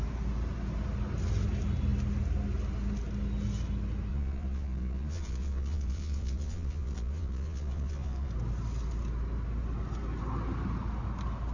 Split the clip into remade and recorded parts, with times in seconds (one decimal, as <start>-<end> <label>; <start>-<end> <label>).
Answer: 0.0-4.1 recorded; 4.1-8.3 remade; 8.3-11.5 recorded